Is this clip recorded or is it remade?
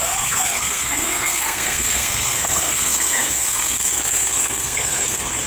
remade